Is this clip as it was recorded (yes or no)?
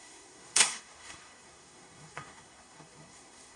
no